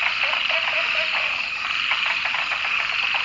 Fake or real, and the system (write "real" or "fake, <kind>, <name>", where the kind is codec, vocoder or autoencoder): real